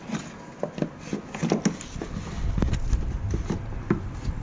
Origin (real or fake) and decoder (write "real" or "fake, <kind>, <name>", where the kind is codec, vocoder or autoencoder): real